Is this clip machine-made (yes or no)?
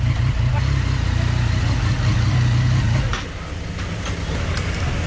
no